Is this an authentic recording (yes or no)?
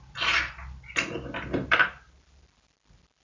yes